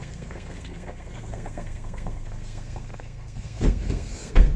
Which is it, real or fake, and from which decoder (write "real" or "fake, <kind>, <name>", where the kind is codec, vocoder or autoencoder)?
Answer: fake, codec, SNAC